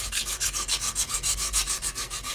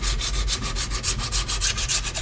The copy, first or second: first